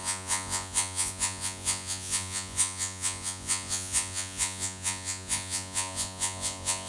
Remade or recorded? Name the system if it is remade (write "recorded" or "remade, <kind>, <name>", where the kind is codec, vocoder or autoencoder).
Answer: remade, vocoder, Vocos